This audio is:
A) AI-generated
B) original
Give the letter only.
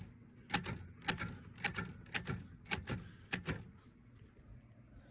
B